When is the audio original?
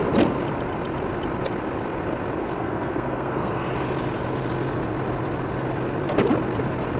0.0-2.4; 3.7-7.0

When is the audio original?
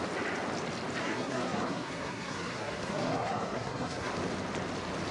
0.0-1.0; 4.1-5.1